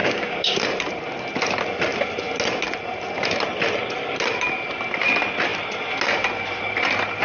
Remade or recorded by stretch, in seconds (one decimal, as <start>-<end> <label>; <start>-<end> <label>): 0.0-0.6 remade; 0.6-7.2 recorded